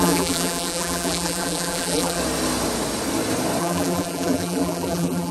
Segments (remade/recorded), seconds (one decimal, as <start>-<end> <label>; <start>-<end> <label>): 0.0-2.2 remade; 2.2-3.6 recorded; 3.6-5.3 remade